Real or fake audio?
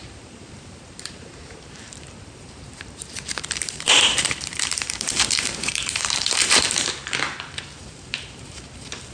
fake